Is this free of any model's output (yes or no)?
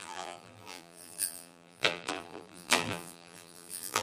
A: no